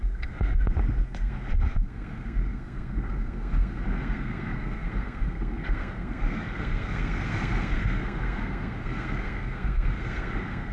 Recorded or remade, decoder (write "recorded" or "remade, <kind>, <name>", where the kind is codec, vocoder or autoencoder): remade, codec, SNAC